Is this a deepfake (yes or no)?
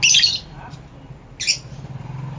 no